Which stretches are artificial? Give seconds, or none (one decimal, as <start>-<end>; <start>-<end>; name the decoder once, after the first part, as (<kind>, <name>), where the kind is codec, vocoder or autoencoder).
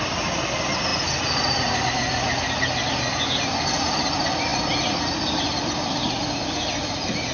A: none